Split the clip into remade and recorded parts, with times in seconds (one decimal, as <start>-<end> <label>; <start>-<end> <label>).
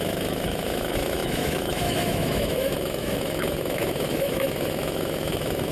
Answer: 0.0-5.7 remade